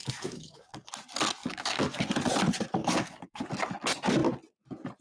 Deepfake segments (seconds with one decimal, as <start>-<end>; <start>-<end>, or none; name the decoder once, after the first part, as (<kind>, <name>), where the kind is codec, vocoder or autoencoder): 0.0-0.9 (codec, DAC); 1.4-2.0; 2.8-3.5